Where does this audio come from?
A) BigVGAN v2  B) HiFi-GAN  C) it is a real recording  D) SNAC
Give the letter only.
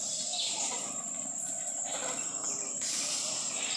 A